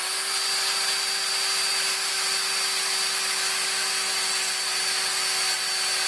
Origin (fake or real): real